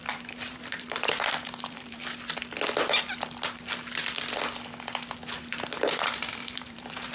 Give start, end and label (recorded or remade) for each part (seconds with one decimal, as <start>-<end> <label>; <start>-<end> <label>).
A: 0.0-2.0 remade; 2.0-5.4 recorded; 5.4-7.1 remade